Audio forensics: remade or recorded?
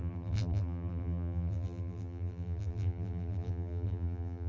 remade